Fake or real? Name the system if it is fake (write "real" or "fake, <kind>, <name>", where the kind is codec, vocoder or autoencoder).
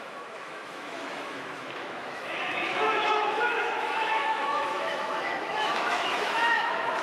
fake, autoencoder, DAC-VAE